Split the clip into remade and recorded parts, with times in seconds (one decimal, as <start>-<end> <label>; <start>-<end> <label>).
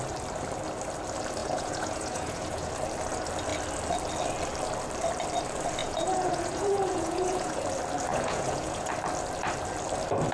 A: 0.0-1.4 recorded; 1.4-2.7 remade; 2.7-5.8 recorded; 5.8-7.6 remade; 7.6-8.1 recorded; 8.1-8.9 remade; 8.9-10.3 recorded